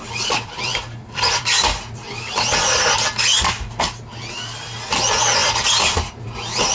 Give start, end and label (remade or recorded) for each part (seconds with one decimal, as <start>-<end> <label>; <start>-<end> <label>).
0.0-2.4 remade; 2.4-5.4 recorded; 5.4-6.1 remade; 6.1-6.7 recorded